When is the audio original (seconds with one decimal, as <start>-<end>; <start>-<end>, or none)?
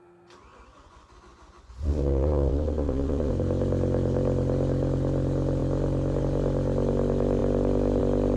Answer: 0.0-0.5; 3.3-8.4